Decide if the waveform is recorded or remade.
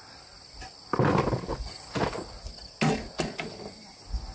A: recorded